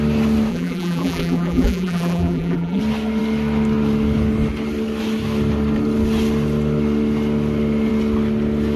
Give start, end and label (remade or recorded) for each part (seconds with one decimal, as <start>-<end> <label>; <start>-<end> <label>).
0.0-0.5 recorded; 0.5-2.8 remade; 2.8-8.8 recorded